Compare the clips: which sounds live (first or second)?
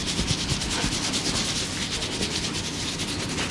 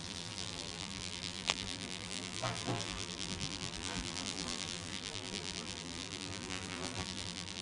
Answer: first